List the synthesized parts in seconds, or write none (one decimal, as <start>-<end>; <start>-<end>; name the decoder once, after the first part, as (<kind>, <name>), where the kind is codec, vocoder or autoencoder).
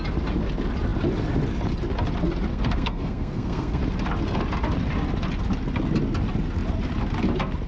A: 2.5-3.8 (codec, SNAC)